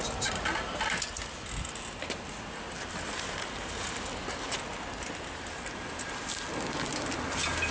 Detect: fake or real real